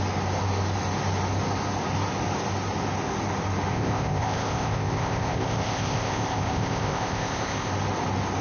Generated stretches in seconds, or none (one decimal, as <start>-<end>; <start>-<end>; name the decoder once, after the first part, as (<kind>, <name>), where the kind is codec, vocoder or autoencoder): 3.7-7.7 (codec, ZipCodec)